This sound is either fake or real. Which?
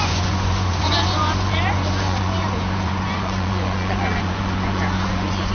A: fake